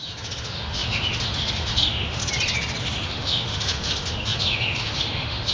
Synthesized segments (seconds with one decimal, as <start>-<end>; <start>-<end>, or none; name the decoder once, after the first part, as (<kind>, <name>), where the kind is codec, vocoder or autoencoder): 0.0-2.2 (autoencoder, DAC-VAE); 2.8-5.5